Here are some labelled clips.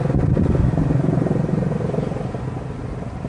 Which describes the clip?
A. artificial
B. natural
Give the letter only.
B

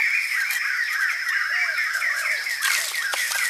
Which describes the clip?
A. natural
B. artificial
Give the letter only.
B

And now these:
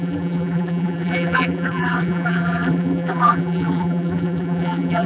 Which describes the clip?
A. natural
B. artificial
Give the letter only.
B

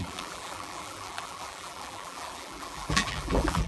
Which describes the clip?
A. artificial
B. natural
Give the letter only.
A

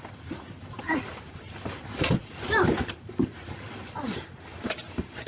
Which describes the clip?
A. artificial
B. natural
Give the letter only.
A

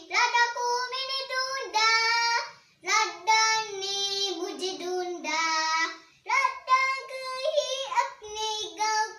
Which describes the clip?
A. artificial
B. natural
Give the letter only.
B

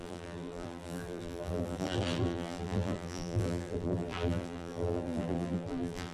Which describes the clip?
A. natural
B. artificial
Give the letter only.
B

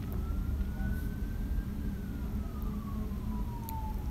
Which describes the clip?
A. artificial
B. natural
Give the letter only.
B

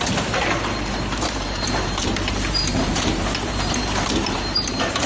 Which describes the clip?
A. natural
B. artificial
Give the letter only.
B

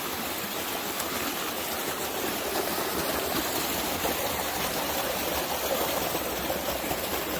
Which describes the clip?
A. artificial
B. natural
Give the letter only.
B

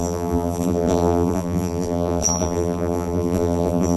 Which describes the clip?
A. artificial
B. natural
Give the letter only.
A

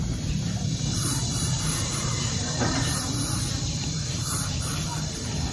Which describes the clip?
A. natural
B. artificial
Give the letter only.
B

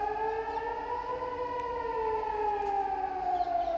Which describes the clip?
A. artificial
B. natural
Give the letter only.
B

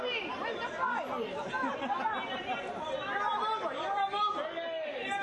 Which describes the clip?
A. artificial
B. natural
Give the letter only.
B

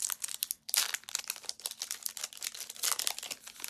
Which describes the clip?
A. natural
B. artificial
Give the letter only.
A